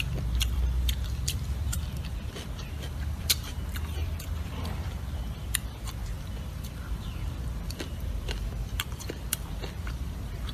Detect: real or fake fake